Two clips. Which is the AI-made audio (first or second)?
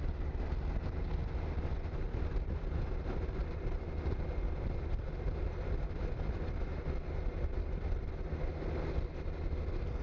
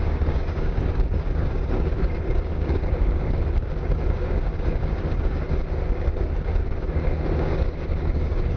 second